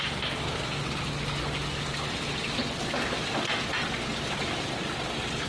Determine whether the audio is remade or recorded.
recorded